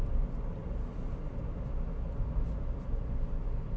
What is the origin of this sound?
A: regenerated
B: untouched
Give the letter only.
B